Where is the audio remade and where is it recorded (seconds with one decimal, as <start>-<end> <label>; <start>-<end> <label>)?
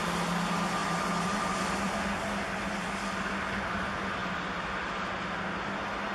0.0-0.8 recorded; 0.8-2.2 remade; 2.2-4.2 recorded; 4.2-5.0 remade; 5.0-6.1 recorded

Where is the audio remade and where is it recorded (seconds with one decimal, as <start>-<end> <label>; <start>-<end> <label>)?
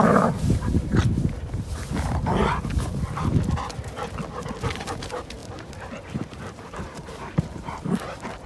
0.0-1.0 remade; 1.0-5.0 recorded; 5.0-8.5 remade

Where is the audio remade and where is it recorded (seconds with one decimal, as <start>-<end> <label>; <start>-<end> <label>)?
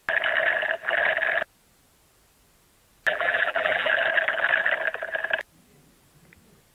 0.0-3.1 recorded; 3.1-3.9 remade; 3.9-6.7 recorded